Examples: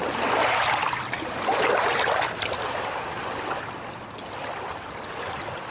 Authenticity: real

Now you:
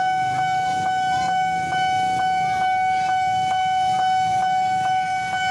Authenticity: real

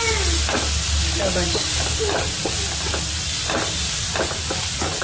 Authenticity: real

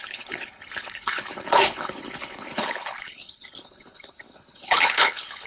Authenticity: fake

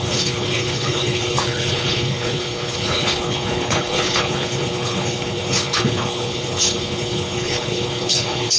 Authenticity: fake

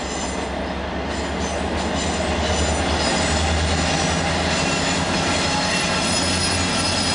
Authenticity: real